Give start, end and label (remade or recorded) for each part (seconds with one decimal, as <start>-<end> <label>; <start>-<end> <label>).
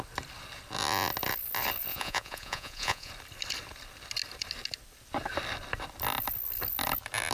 0.0-1.9 recorded; 1.9-3.1 remade; 3.1-7.3 recorded